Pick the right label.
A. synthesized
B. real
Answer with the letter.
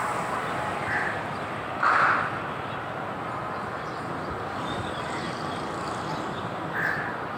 B